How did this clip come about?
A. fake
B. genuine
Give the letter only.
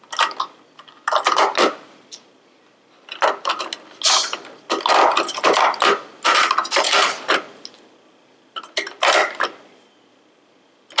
B